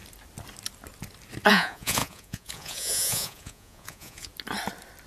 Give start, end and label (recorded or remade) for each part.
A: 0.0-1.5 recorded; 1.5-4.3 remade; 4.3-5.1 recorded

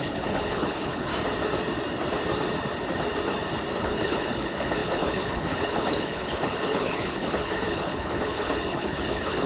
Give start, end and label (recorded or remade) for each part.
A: 0.0-1.1 remade; 1.1-3.8 recorded; 3.8-9.5 remade